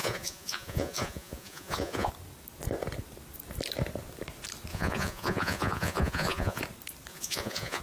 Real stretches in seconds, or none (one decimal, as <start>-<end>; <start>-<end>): 2.1-4.7; 6.6-7.1